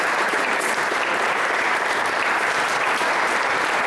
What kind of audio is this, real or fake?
fake